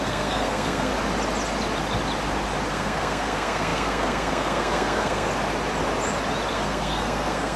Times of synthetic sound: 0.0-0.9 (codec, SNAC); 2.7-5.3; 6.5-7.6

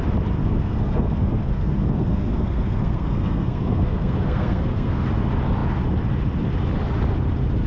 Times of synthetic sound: 0.4-5.0 (codec, SNAC)

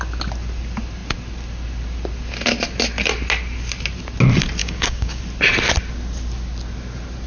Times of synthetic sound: 4.6-5.2 (codec, DAC)